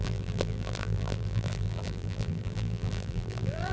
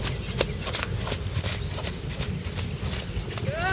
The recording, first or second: second